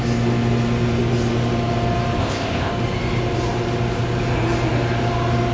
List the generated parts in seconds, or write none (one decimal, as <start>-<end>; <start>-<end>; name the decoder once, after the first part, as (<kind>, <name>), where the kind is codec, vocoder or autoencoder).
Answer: 2.2-2.7 (codec, ZipCodec)